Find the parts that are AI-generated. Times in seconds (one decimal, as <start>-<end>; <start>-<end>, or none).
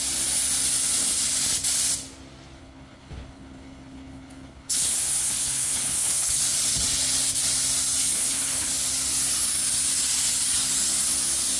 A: 2.6-6.4; 8.0-8.7